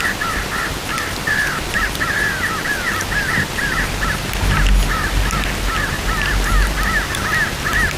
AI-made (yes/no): no